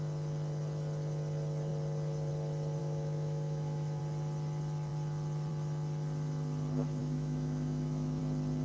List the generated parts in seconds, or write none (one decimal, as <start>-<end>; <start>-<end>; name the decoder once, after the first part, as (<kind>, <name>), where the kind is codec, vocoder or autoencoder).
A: 2.8-4.0 (autoencoder, DAC-VAE); 7.0-8.2